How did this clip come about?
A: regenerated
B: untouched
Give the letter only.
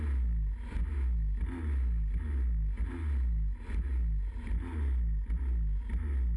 B